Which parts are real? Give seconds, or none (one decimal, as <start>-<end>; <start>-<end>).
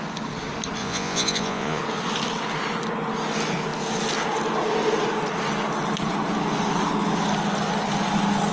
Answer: 0.0-0.8; 1.8-8.5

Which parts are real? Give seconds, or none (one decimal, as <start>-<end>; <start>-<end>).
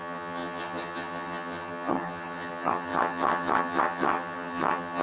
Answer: none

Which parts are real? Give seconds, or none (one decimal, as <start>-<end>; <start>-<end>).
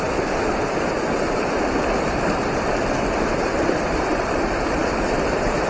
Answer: 0.0-5.7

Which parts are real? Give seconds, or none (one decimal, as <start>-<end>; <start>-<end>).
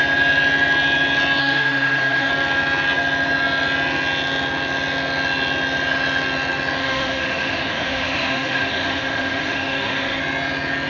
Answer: 0.0-1.4; 2.3-6.8; 10.2-10.9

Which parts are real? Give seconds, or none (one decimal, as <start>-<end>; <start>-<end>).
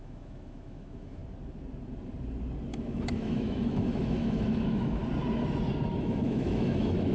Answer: 1.2-2.7; 5.0-6.0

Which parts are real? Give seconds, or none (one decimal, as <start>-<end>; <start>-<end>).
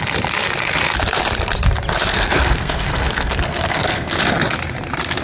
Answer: 0.0-2.1; 4.1-5.2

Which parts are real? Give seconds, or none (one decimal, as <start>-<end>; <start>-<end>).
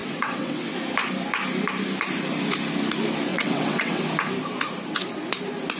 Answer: 0.7-3.3; 4.0-5.8